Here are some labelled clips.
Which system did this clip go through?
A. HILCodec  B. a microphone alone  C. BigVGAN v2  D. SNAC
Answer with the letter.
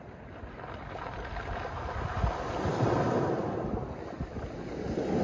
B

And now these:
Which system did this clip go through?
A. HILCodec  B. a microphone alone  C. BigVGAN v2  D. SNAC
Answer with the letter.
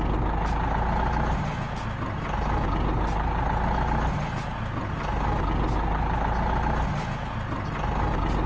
B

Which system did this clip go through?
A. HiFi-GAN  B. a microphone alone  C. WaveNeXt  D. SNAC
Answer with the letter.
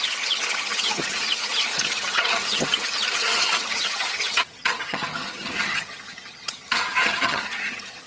A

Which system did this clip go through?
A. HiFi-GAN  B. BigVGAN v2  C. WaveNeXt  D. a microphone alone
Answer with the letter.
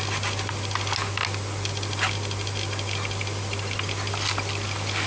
D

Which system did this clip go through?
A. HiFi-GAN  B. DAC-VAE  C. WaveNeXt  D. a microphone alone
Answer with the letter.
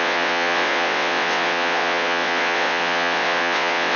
C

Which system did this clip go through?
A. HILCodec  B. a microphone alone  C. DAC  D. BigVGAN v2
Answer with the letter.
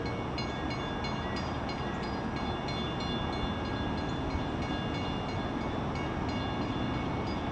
B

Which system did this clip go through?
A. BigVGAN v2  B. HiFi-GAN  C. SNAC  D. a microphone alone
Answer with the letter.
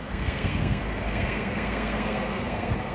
C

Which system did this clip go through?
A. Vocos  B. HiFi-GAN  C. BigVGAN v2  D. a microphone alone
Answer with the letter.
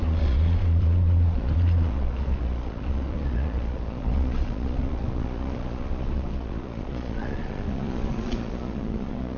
A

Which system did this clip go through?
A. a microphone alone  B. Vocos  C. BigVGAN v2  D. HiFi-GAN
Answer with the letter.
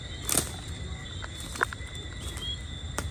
A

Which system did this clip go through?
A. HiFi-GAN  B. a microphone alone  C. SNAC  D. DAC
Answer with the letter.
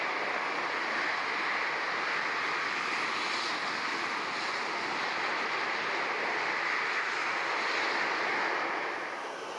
B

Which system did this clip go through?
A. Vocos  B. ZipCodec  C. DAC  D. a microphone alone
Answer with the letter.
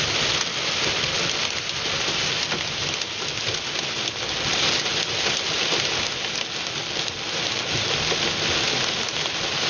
D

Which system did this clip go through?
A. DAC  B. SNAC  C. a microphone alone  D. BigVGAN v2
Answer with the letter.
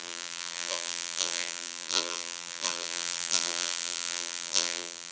D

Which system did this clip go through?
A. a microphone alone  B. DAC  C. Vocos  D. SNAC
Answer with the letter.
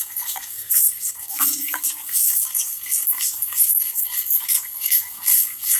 D